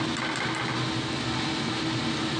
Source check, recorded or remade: recorded